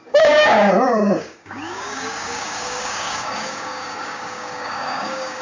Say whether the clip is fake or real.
fake